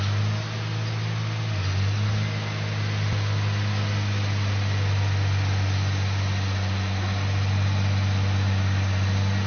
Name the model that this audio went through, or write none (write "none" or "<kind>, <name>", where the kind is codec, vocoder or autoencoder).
none